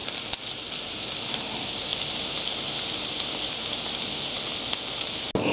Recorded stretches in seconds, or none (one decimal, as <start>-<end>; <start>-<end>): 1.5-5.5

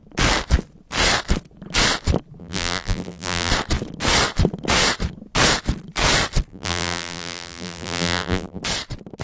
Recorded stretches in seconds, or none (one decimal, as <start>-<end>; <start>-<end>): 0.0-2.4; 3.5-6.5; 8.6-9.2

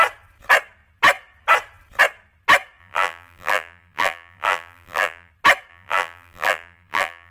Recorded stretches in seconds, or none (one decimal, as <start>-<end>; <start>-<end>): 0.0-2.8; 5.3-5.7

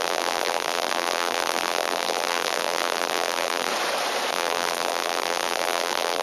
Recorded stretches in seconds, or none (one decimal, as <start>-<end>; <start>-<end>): 3.7-4.3

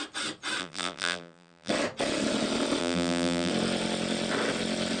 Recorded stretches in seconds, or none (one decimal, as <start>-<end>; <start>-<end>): 0.0-0.6; 1.7-2.8; 3.5-5.0

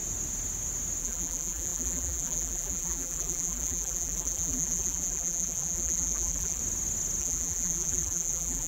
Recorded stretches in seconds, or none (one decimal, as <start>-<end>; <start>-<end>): 0.0-1.0; 6.6-7.2

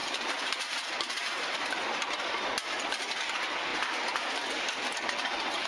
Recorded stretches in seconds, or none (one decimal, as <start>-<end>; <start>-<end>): 2.4-5.7